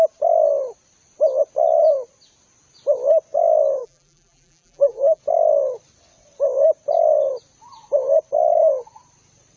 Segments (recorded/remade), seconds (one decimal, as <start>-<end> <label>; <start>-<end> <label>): 0.0-3.8 recorded; 3.8-5.2 remade; 5.2-9.6 recorded